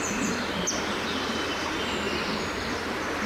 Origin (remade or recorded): recorded